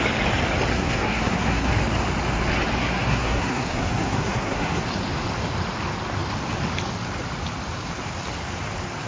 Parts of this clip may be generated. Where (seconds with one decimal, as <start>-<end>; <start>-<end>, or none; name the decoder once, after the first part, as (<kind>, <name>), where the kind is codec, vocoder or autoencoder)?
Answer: 0.7-1.7 (codec, SNAC); 2.8-4.8